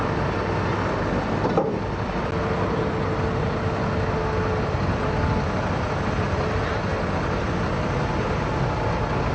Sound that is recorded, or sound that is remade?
recorded